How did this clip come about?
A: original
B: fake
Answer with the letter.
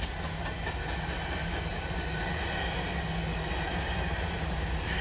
A